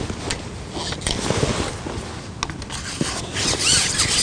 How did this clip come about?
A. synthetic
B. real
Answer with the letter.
B